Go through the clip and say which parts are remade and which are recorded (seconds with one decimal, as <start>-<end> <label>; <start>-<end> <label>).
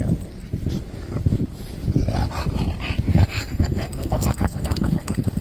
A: 0.0-3.1 recorded; 3.1-5.4 remade